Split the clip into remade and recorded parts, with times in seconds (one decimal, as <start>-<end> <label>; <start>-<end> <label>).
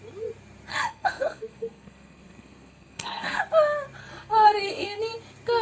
0.0-0.7 recorded; 0.7-3.4 remade; 3.4-4.0 recorded; 4.0-5.0 remade; 5.0-5.6 recorded